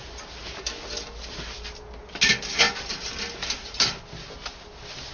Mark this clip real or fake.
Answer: real